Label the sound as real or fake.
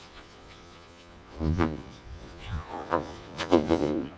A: fake